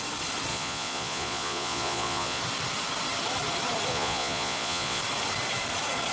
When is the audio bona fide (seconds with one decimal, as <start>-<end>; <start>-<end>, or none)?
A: 0.0-0.5; 2.4-3.9; 5.0-6.1